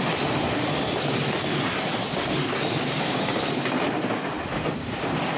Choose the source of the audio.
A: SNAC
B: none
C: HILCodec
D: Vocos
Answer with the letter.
B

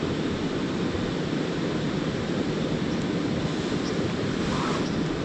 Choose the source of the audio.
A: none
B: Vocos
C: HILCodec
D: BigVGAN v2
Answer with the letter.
A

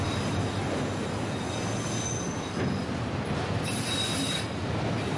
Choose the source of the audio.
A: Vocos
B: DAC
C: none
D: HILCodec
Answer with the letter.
C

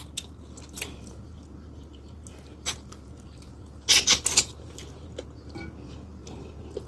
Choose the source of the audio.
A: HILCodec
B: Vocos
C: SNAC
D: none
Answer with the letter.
D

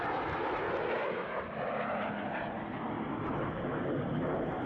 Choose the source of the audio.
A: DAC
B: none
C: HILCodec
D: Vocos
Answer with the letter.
B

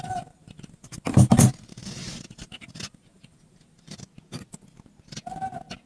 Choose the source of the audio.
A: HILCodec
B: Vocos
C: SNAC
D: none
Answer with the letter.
D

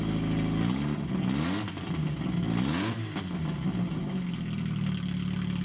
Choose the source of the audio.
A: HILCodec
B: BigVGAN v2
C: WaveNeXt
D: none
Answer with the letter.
D